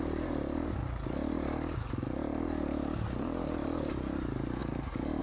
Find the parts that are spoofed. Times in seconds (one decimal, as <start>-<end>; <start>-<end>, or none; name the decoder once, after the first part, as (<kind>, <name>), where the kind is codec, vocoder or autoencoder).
0.0-0.8 (vocoder, BigVGAN v2); 3.9-4.6